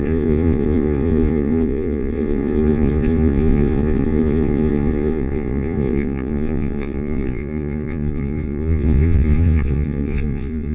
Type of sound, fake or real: fake